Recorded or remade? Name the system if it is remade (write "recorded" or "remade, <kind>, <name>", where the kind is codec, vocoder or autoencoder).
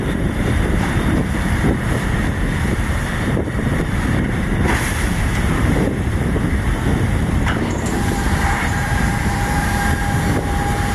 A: remade, vocoder, BigVGAN v2